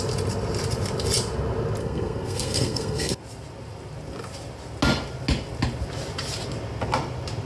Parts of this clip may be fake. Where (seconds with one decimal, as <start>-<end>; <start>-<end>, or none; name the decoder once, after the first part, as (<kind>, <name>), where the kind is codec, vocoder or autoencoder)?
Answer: 1.8-3.2 (codec, SNAC)